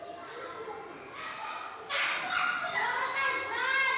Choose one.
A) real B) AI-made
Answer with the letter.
A